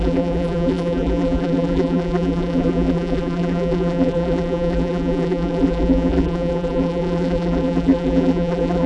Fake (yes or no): yes